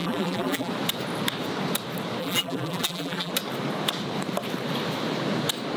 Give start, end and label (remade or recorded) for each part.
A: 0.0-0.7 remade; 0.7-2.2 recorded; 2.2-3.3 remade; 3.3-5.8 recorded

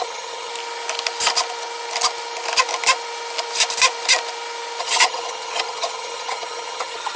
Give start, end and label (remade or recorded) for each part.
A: 0.0-0.5 remade; 0.5-4.8 recorded; 4.8-7.2 remade

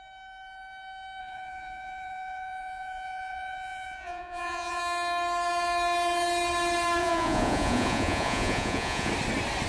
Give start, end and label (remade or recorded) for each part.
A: 0.0-1.2 recorded; 1.2-4.8 remade; 4.8-7.0 recorded; 7.0-9.1 remade; 9.1-9.7 recorded

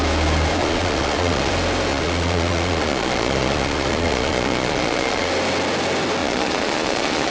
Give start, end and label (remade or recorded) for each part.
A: 0.0-0.6 recorded; 0.6-1.5 remade; 1.5-1.9 recorded; 1.9-5.3 remade; 5.3-6.2 recorded; 6.2-7.3 remade

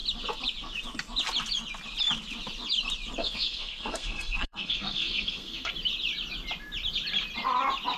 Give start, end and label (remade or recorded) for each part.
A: 0.0-3.2 recorded; 3.2-5.7 remade; 5.7-8.0 recorded

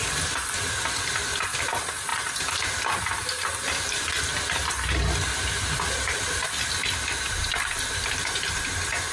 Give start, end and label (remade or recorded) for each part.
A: 0.0-2.1 remade; 2.1-5.4 recorded; 5.4-9.1 remade